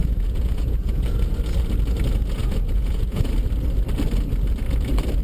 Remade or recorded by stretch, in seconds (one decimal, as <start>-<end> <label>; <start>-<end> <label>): 0.0-1.3 remade; 1.3-2.4 recorded; 2.4-3.3 remade; 3.3-5.2 recorded